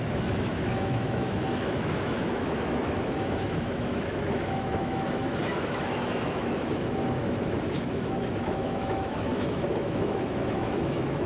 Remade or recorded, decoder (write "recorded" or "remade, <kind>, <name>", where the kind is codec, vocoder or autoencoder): remade, autoencoder, DAC-VAE